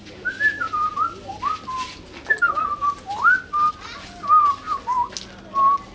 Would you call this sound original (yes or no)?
yes